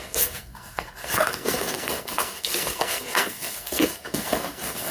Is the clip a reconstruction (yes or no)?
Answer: yes